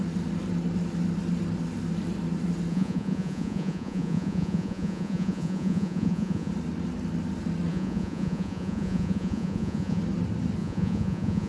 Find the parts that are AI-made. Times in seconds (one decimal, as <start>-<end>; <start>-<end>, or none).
2.7-6.5; 7.7-10.0; 10.6-11.5